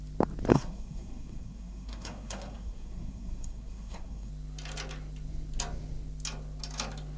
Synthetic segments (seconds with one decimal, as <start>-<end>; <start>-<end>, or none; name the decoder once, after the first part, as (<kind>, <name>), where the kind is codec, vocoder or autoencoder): 0.5-4.3 (codec, SNAC)